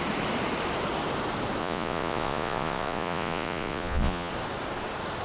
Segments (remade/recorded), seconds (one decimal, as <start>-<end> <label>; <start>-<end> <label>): 0.0-1.6 recorded; 1.6-4.3 remade; 4.3-5.2 recorded